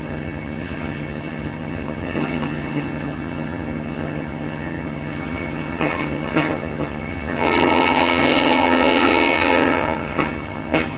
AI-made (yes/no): yes